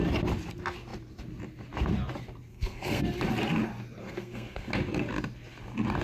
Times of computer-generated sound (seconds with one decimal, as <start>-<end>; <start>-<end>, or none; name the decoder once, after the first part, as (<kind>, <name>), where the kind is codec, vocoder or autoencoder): 2.5-3.0 (codec, SNAC); 4.0-4.7